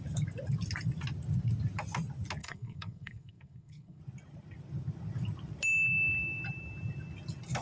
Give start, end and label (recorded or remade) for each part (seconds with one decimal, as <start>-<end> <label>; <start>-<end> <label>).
0.0-2.4 recorded; 2.4-4.0 remade; 4.0-7.6 recorded